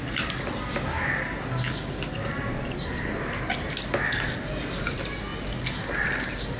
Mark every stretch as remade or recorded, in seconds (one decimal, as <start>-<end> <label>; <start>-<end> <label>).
0.0-6.6 recorded